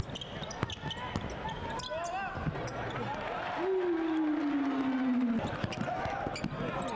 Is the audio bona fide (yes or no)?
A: yes